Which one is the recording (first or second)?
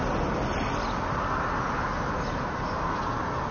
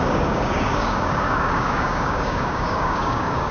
first